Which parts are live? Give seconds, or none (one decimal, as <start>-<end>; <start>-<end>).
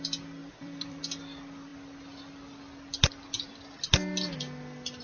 0.0-0.4; 1.0-5.0